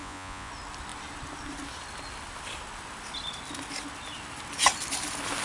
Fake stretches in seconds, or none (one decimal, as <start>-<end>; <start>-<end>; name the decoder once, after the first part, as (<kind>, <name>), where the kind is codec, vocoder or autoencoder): 0.0-0.5 (vocoder, Vocos)